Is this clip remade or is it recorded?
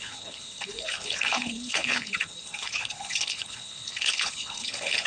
remade